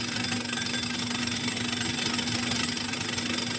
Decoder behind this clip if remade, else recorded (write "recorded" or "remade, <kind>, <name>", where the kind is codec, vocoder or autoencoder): recorded